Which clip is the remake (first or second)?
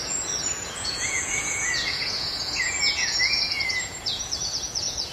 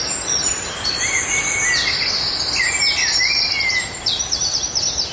first